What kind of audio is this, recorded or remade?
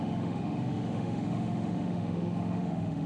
remade